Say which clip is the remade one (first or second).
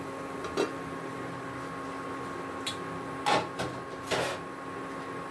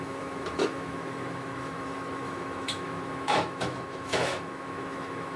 second